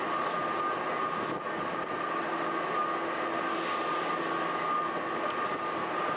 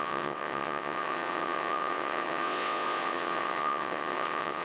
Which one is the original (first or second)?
first